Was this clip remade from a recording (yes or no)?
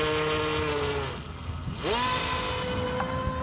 no